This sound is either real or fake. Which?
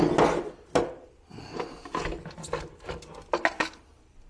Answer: real